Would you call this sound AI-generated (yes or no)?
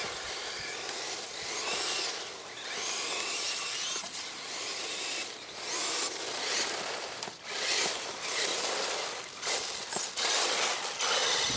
no